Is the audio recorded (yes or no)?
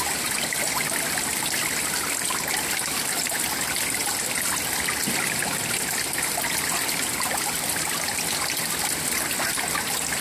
yes